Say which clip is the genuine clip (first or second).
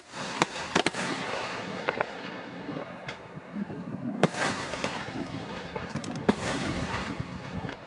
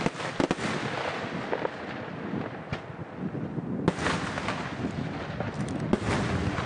second